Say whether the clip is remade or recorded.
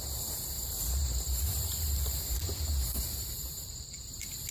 remade